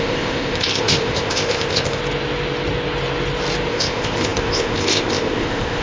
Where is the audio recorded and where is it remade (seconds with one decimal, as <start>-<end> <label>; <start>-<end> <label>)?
0.0-2.0 remade; 2.0-3.7 recorded; 3.7-5.8 remade